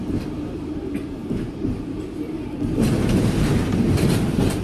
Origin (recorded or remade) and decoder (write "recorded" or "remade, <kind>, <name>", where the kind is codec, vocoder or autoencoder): remade, vocoder, BigVGAN v2